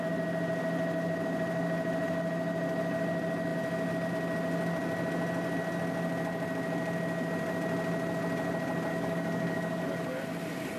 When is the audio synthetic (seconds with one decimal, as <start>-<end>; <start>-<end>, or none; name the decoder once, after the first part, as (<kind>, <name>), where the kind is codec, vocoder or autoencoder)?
8.9-9.8 (codec, DAC)